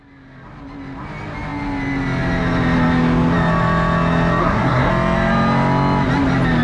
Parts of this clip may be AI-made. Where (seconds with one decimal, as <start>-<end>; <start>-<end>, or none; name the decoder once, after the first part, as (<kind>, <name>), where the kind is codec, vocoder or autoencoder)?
4.4-4.9 (codec, SNAC)